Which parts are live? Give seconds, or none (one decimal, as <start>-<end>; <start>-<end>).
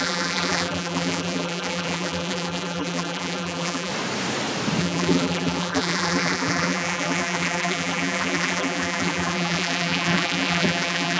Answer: 3.9-4.8